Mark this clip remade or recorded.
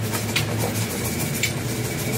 recorded